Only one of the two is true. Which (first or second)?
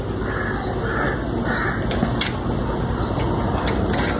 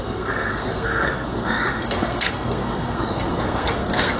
first